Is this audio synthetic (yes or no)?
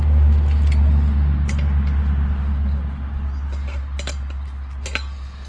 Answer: no